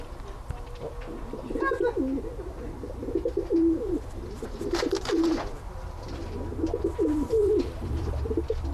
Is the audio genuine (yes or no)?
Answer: no